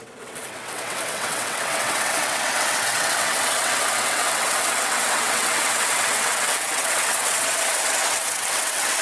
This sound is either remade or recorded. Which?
remade